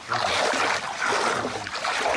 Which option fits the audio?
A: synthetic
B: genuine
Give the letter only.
B